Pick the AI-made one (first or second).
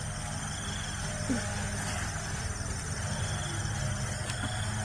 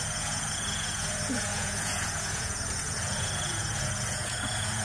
second